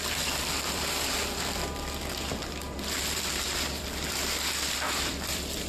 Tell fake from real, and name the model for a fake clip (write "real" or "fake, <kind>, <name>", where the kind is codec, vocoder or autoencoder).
fake, vocoder, BigVGAN v2